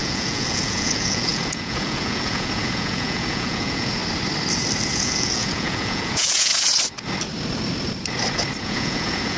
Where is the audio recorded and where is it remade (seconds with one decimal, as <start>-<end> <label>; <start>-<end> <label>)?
0.0-4.0 remade; 4.0-4.9 recorded; 4.9-6.5 remade; 6.5-8.6 recorded; 8.6-9.4 remade